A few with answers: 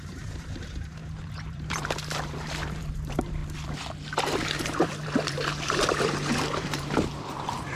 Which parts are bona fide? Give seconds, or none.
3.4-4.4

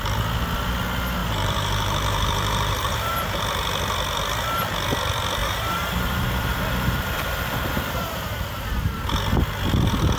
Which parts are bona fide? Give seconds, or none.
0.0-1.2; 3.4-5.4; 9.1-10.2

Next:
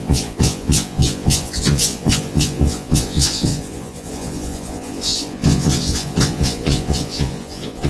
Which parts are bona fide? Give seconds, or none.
none